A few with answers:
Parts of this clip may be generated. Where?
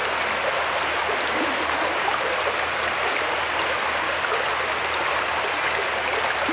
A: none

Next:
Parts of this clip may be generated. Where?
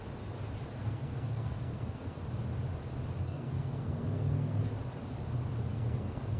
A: 0.8-2.2 (codec, SNAC); 3.2-4.7; 5.7-6.4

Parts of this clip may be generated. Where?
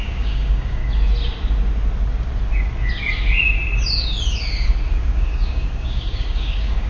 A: 0.0-0.8 (codec, DAC); 4.9-6.9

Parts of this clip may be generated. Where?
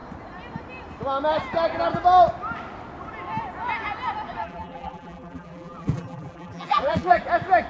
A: 4.4-7.2 (vocoder, BigVGAN v2)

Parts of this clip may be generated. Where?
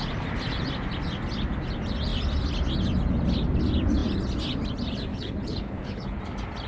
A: 5.1-6.2 (codec, HILCodec)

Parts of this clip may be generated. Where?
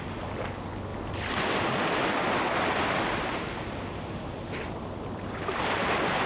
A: none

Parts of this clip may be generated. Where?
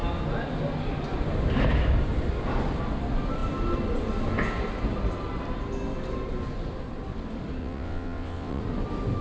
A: 7.6-8.6 (vocoder, WaveNeXt)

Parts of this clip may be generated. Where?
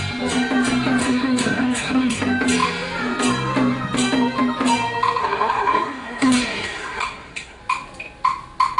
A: 1.0-2.2 (codec, SNAC); 5.2-7.6